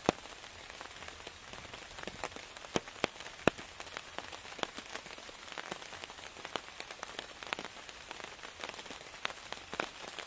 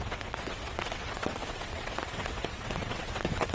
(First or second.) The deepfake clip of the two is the second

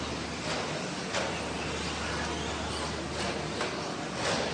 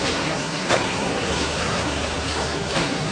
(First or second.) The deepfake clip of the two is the second